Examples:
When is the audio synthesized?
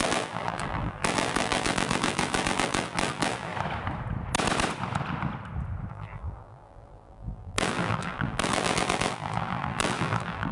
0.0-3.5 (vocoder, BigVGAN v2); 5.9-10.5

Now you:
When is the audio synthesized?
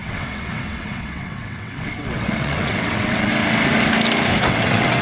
0.0-3.3 (vocoder, WaveNeXt); 4.4-5.0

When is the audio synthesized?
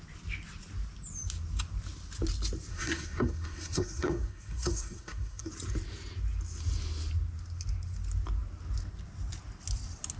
2.7-5.5 (codec, SNAC)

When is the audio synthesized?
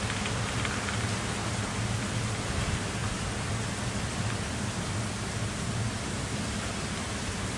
none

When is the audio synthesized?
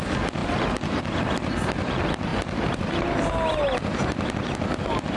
none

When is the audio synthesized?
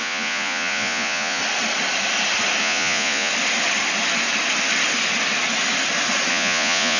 0.0-1.4 (vocoder, Vocos); 2.6-3.3; 6.3-7.0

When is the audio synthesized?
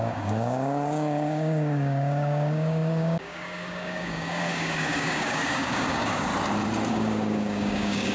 0.0-6.3 (codec, DAC); 6.9-8.1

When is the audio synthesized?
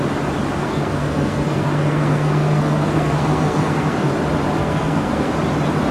0.6-4.1 (codec, SNAC); 4.6-5.3